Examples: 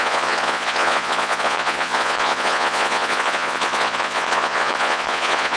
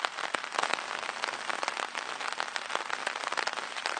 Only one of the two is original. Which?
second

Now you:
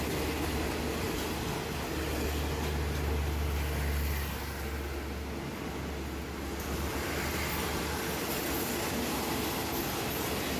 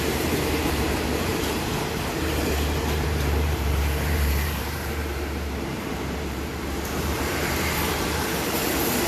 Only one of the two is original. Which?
first